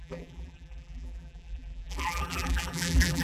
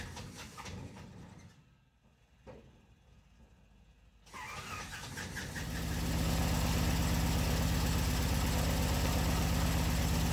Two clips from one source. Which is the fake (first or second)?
first